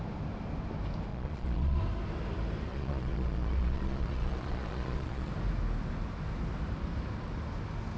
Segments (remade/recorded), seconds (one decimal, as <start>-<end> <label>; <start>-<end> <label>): 0.0-1.1 recorded; 1.1-1.8 remade; 1.8-2.7 recorded; 2.7-5.3 remade; 5.3-8.0 recorded